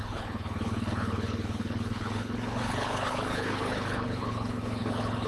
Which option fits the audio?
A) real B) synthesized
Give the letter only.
B